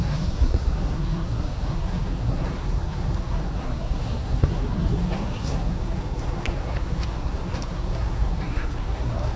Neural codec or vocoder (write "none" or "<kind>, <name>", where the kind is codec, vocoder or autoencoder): codec, SNAC